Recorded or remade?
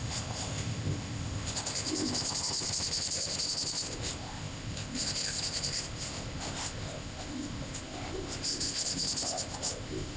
remade